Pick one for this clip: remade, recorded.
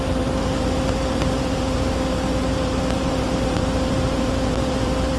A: remade